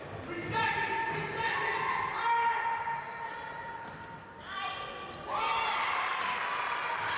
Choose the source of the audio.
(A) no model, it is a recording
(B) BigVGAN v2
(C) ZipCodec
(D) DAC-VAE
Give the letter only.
A